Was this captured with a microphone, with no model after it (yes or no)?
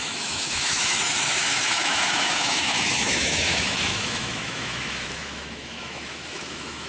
no